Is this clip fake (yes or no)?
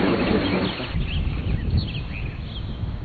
no